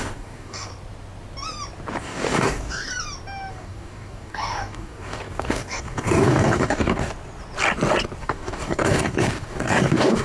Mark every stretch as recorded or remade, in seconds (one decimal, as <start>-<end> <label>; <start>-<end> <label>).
0.0-0.7 remade; 0.7-2.0 recorded; 2.0-2.9 remade; 2.9-3.5 recorded; 3.5-7.1 remade; 7.1-8.2 recorded; 8.2-10.2 remade